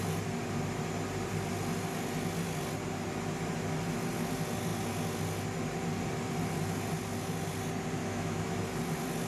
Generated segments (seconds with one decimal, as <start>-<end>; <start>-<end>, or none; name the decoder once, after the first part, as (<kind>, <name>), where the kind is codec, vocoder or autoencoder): 8.0-8.6 (autoencoder, DAC-VAE)